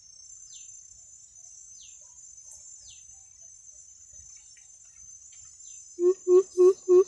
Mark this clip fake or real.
real